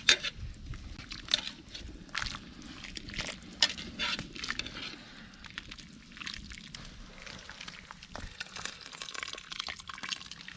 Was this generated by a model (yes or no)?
no